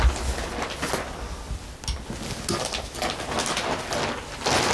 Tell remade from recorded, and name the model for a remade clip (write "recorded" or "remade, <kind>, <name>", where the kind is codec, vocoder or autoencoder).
recorded